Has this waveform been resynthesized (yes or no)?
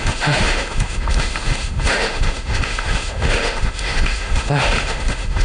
yes